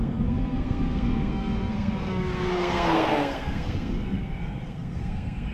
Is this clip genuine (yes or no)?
no